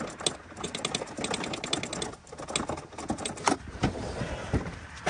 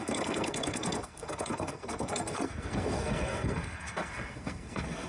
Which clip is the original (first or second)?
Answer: first